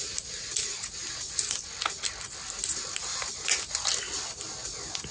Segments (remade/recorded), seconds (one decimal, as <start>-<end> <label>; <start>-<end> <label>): 0.0-5.1 recorded